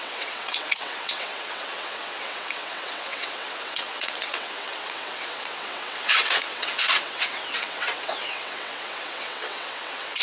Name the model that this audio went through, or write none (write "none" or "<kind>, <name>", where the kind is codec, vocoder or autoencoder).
vocoder, WaveNeXt